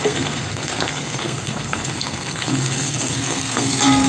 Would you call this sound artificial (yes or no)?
yes